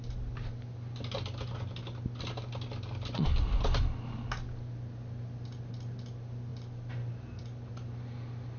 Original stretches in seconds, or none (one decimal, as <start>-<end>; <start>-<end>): 0.0-8.6